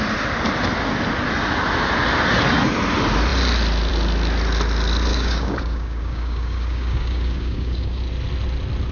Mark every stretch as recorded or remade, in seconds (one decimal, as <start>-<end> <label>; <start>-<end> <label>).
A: 0.0-5.1 recorded; 5.1-8.0 remade; 8.0-8.9 recorded